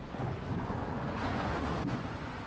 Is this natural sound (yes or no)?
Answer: no